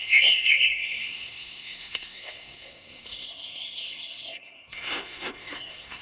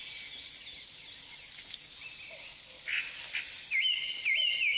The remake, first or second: first